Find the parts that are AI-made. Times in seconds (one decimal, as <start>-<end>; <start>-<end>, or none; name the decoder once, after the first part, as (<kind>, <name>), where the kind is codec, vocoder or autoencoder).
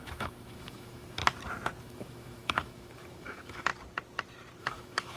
0.0-1.2 (autoencoder, DAC-VAE); 1.8-3.7; 4.6-5.2